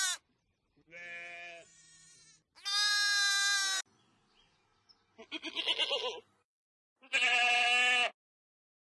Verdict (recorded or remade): recorded